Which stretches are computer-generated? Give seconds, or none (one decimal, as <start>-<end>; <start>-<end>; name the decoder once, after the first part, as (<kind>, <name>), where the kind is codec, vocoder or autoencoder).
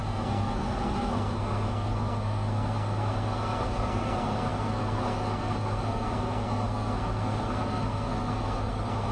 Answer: 0.0-9.1 (codec, SNAC)